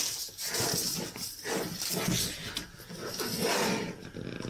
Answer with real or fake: real